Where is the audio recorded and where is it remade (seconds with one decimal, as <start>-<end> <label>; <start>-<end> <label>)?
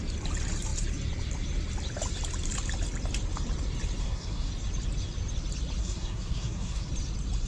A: 0.0-4.0 recorded; 4.0-4.5 remade; 4.5-5.8 recorded; 5.8-6.9 remade; 6.9-7.5 recorded